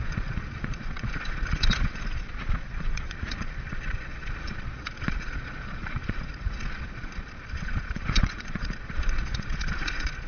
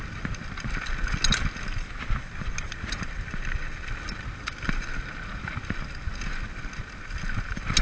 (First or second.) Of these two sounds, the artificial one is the first